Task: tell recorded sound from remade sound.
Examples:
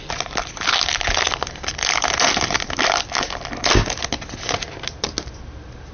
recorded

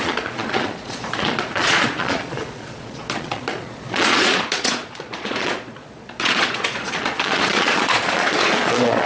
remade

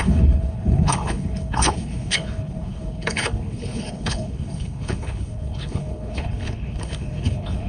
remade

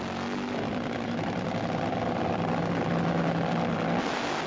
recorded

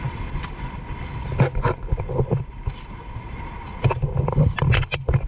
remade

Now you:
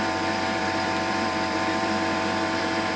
remade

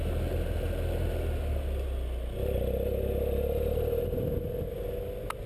recorded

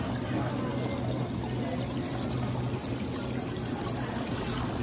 recorded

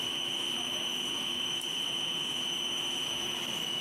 remade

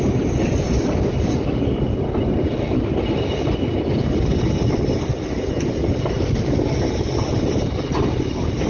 recorded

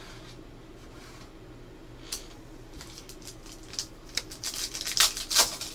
recorded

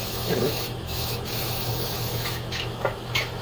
remade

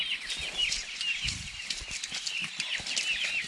recorded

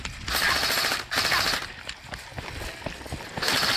recorded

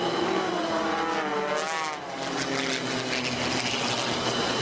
recorded